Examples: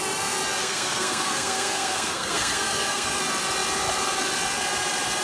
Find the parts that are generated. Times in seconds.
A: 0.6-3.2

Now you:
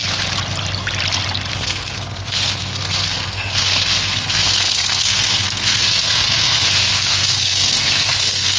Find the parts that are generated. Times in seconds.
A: 1.5-8.6

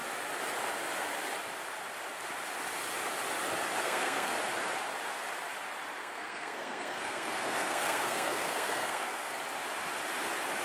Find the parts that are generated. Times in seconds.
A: 3.8-4.3; 6.0-9.4